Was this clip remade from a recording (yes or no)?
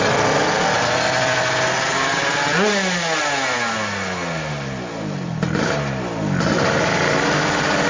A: no